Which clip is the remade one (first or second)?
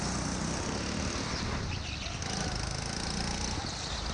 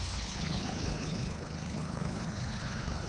second